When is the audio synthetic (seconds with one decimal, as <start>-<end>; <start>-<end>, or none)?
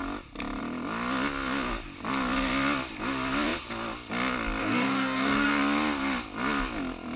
4.6-5.5